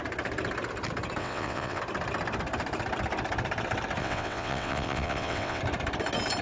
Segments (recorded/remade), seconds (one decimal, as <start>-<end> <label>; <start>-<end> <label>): 0.0-1.2 recorded; 1.2-1.8 remade; 1.8-4.0 recorded; 4.0-5.6 remade; 5.6-6.4 recorded